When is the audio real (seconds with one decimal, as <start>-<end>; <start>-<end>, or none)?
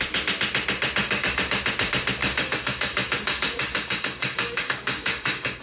0.0-1.0; 1.6-2.2